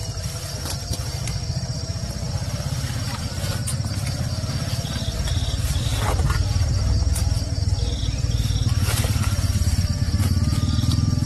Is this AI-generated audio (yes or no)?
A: no